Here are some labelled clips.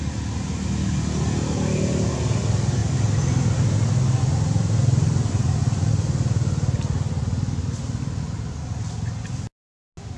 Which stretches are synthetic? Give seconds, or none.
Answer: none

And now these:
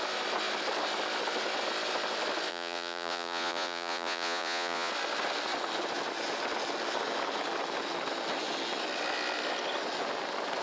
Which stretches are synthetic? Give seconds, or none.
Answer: 2.5-4.9 (vocoder, Vocos)

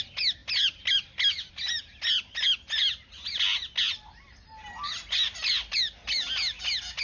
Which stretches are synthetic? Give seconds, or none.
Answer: none

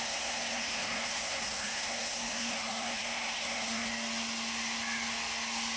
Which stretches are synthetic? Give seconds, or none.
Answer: 0.0-3.9 (codec, SNAC)

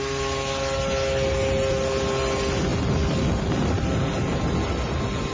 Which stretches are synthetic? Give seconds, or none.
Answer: none